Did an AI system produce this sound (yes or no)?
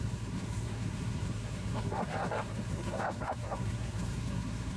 yes